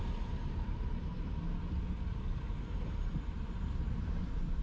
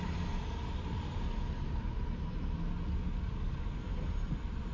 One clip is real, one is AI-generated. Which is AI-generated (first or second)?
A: first